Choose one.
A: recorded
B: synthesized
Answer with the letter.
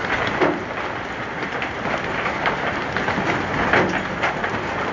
A